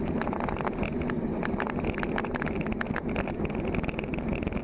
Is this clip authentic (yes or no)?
yes